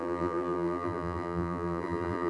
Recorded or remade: remade